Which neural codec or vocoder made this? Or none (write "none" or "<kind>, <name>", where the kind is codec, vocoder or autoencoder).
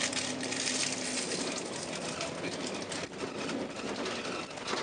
none